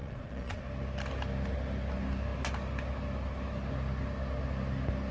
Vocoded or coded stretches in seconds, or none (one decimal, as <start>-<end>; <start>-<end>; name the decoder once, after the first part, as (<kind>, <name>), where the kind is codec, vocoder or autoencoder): 0.0-0.6 (vocoder, Vocos)